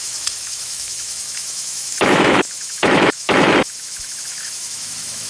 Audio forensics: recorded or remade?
remade